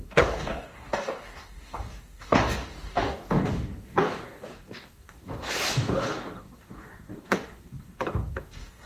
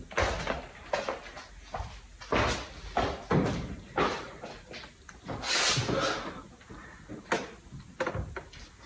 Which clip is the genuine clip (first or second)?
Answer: second